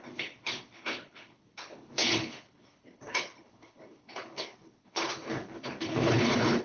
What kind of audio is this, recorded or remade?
remade